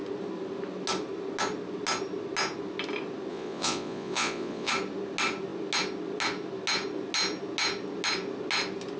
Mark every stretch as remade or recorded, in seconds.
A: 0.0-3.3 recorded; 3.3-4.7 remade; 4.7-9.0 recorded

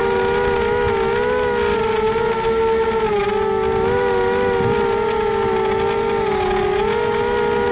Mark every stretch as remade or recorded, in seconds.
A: 0.0-7.7 recorded

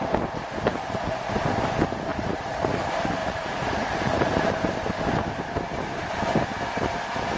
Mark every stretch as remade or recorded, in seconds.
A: 0.0-0.7 recorded; 0.7-1.3 remade; 1.3-2.1 recorded; 2.1-2.8 remade; 2.8-3.2 recorded; 3.2-4.5 remade; 4.5-7.4 recorded

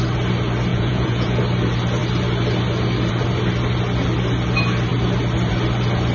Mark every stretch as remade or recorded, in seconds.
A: 0.0-0.7 recorded; 0.7-1.4 remade; 1.4-6.1 recorded